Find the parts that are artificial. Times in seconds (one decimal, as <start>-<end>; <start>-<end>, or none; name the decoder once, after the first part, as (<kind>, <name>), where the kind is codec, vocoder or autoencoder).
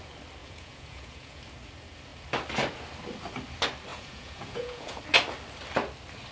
0.4-1.4 (vocoder, Vocos); 3.9-5.0